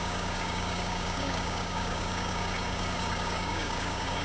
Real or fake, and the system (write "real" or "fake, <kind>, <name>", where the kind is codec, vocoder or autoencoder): fake, codec, DAC